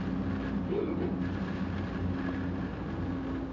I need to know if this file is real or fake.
real